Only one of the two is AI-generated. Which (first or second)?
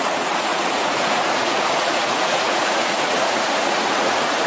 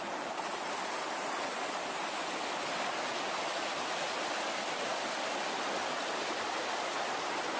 first